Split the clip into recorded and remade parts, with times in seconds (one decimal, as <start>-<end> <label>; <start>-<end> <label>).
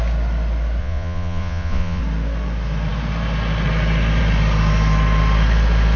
0.0-0.8 recorded; 0.8-2.0 remade; 2.0-6.0 recorded